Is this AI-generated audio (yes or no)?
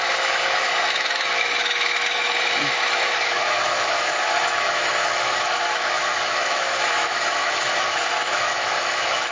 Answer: yes